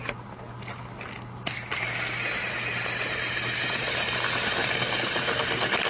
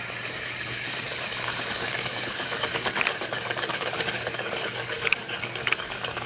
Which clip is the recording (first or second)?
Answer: first